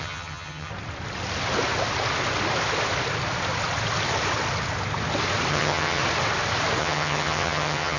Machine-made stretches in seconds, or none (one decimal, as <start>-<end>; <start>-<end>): 0.0-0.7; 5.5-6.0; 6.8-8.0